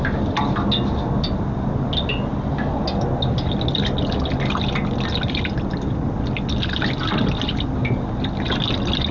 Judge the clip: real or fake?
real